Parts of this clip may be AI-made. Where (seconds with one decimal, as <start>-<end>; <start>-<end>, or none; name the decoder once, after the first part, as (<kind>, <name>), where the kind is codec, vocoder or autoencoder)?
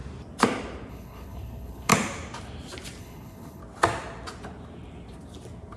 0.9-1.9 (codec, HILCodec); 3.0-3.6